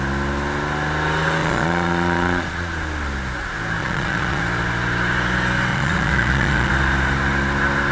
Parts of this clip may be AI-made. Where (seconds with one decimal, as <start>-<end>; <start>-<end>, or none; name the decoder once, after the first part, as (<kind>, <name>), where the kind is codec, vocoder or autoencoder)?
1.4-2.7 (vocoder, Vocos); 3.8-4.4; 5.7-6.7